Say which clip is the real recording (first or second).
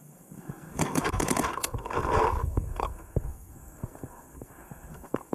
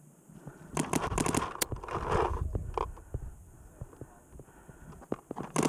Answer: second